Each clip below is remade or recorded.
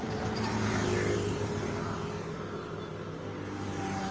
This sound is recorded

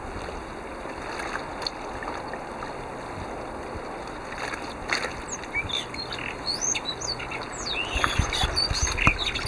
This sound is recorded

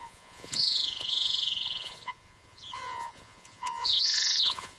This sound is remade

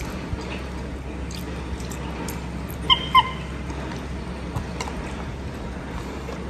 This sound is recorded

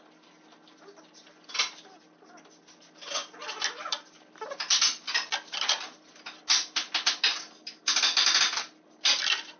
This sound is recorded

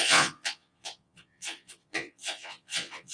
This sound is remade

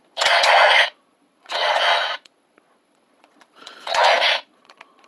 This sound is remade